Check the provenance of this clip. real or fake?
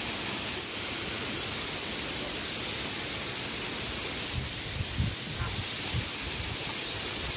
real